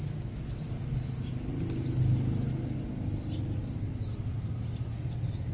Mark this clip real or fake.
real